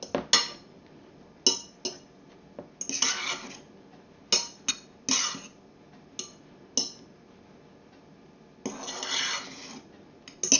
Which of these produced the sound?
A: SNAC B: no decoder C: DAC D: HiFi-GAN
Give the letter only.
B